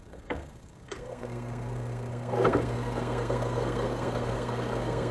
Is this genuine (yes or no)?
no